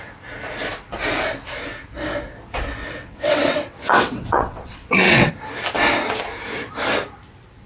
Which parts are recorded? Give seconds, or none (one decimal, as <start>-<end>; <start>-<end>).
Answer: 0.0-2.8; 5.3-7.7